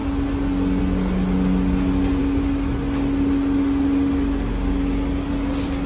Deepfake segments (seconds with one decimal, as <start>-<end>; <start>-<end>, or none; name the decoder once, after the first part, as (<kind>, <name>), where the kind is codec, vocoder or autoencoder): none